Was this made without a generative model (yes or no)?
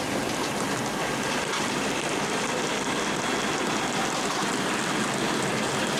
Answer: yes